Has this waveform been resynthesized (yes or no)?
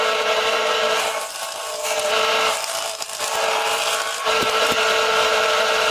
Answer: yes